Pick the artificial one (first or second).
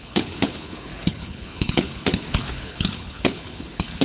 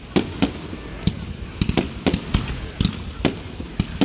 first